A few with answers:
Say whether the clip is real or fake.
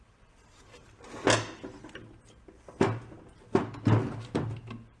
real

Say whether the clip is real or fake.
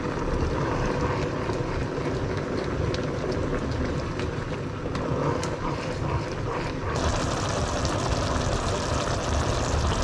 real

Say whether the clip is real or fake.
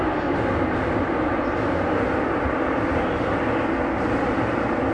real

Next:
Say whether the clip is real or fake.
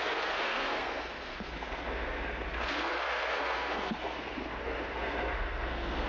fake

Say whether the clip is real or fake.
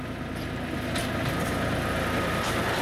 real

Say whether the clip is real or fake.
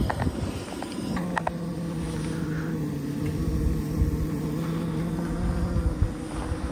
real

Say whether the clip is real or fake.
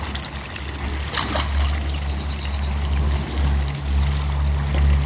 real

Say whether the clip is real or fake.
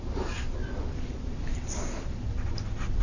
real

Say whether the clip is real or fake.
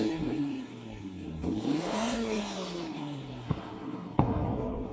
fake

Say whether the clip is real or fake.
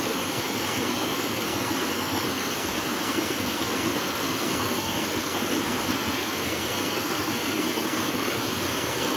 fake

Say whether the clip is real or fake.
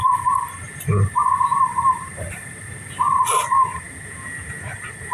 real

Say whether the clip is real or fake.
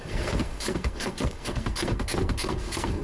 fake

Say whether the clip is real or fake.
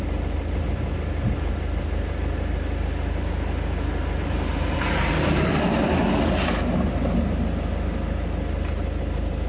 real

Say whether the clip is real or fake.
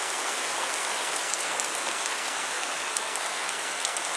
fake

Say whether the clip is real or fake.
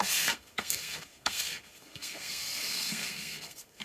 fake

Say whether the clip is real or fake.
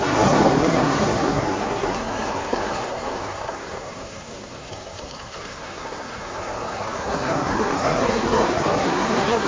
fake